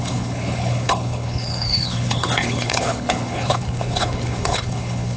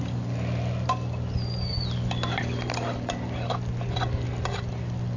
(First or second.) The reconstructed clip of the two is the first